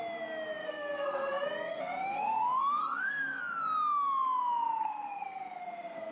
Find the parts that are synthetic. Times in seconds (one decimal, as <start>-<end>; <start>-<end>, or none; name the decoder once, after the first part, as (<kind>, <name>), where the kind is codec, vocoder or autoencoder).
0.6-3.4 (codec, SNAC); 4.8-6.1